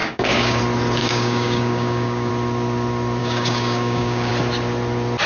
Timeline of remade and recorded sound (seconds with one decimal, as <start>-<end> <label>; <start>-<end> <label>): 0.0-0.6 remade; 0.6-1.0 recorded; 1.0-2.3 remade; 2.3-3.2 recorded; 3.2-4.3 remade; 4.3-5.3 recorded